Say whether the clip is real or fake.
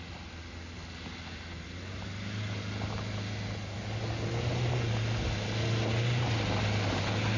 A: real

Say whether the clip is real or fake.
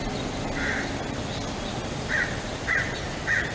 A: real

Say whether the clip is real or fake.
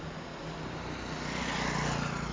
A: real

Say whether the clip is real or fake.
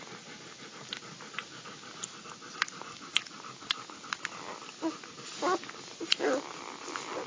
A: real